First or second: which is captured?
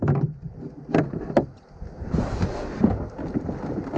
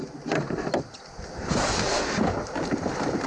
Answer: first